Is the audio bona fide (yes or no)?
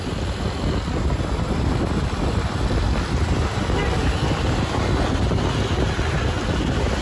yes